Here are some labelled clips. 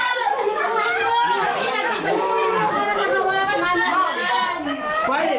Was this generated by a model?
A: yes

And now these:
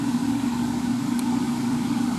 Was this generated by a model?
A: yes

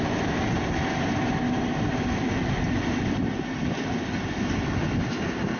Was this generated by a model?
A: no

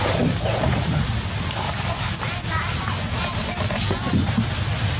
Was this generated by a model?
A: no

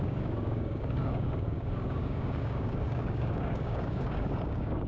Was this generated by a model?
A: yes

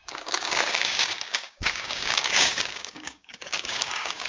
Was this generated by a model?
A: yes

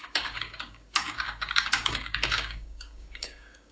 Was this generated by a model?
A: yes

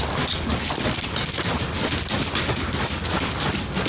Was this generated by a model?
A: no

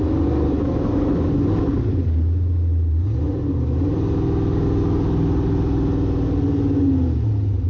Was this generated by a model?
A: no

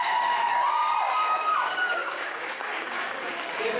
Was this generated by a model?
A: yes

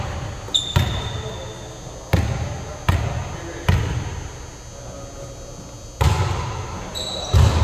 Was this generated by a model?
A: no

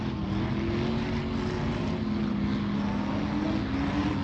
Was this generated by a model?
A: no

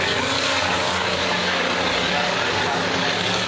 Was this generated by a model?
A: yes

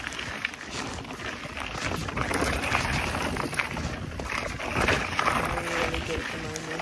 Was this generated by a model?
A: no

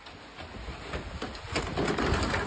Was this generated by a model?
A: no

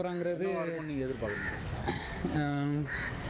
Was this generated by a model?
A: yes